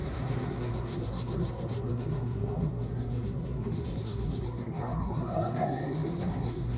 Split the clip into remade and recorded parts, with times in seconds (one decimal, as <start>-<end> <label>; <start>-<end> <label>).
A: 0.0-6.8 remade